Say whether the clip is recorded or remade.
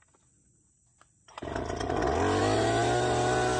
recorded